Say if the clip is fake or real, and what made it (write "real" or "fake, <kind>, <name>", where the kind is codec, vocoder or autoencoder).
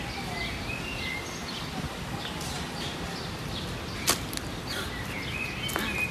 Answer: real